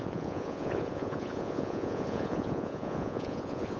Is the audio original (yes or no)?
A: no